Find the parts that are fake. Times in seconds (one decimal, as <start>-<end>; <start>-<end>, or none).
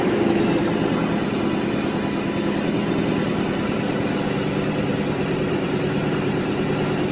2.8-7.1